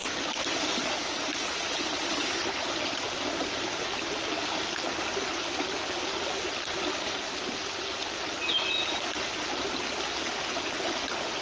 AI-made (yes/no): no